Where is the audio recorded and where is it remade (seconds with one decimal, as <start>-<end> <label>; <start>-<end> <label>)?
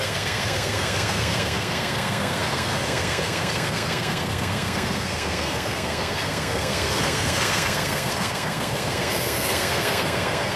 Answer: 0.0-10.6 remade